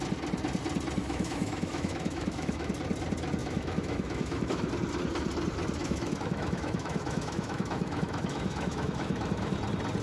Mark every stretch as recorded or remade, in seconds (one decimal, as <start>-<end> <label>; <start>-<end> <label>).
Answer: 0.0-1.0 recorded; 1.0-2.7 remade; 2.7-3.4 recorded; 3.4-4.7 remade; 4.7-5.8 recorded; 5.8-9.5 remade; 9.5-10.0 recorded